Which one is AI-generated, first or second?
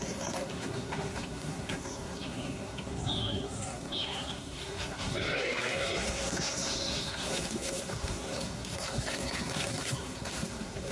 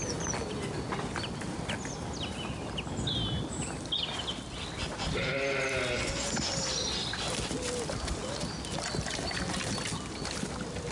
first